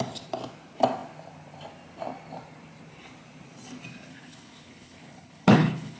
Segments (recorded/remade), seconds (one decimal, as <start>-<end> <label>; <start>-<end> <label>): 0.0-4.1 recorded; 4.1-6.0 remade